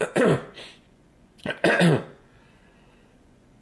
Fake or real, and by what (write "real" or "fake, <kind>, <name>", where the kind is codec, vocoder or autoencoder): fake, vocoder, Vocos